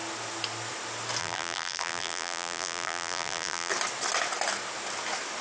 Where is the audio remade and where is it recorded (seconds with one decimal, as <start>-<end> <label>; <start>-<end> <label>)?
0.0-1.2 recorded; 1.2-3.7 remade; 3.7-5.4 recorded